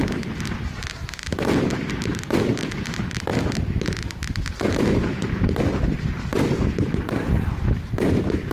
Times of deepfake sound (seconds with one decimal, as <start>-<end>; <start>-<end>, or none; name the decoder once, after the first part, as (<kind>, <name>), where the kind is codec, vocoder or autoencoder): none